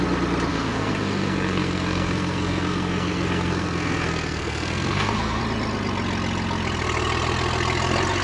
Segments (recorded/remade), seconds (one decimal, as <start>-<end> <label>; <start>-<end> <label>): 0.0-0.5 recorded; 0.5-5.4 remade; 5.4-8.2 recorded